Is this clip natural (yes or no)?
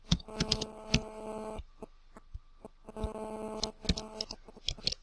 yes